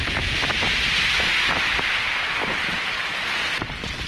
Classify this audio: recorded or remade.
recorded